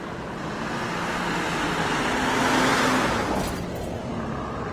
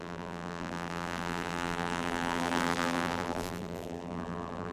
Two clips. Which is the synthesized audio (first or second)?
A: second